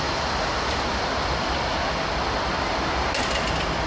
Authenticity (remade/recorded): recorded